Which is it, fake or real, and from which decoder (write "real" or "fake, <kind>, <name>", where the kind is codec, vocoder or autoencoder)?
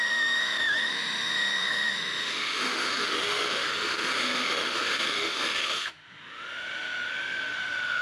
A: fake, autoencoder, DAC-VAE